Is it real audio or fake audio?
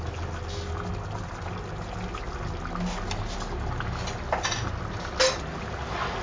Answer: real